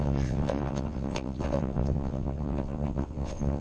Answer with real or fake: fake